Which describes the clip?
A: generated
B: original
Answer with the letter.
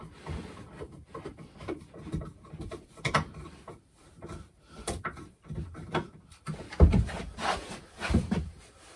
A